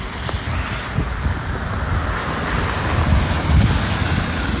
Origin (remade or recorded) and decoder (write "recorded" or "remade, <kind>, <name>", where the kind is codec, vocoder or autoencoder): recorded